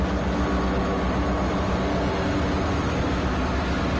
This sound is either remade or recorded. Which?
recorded